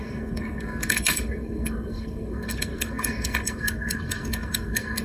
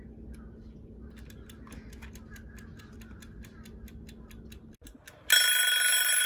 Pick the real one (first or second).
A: second